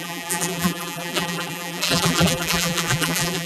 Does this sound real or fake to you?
fake